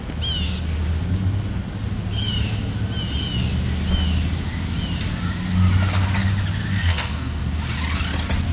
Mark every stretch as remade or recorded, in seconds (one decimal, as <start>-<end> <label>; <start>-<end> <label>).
0.0-6.7 recorded; 6.7-7.4 remade; 7.4-8.5 recorded